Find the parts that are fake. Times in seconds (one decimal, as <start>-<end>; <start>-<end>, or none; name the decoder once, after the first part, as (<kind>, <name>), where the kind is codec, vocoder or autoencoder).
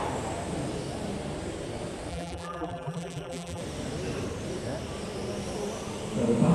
2.1-3.6 (vocoder, BigVGAN v2)